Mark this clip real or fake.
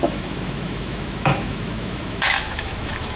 fake